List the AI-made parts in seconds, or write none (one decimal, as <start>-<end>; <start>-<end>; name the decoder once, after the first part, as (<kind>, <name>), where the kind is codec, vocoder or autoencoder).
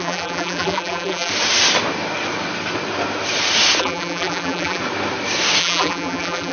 0.0-1.3 (vocoder, BigVGAN v2); 3.8-4.8; 5.6-6.5